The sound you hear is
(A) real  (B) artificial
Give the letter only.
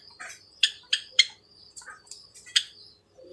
B